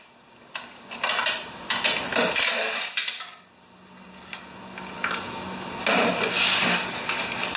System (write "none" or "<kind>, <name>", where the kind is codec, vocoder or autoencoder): none